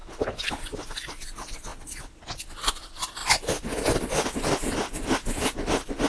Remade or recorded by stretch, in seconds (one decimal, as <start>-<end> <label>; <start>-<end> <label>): 0.0-0.5 remade; 0.5-6.1 recorded